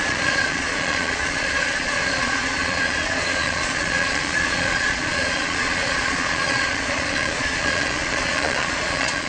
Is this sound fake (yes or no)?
yes